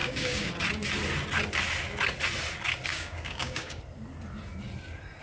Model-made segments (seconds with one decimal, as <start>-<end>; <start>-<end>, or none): 0.0-0.5; 2.9-3.8